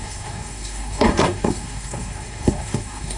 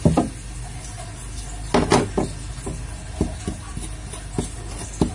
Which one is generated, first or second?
first